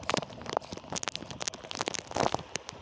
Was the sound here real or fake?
real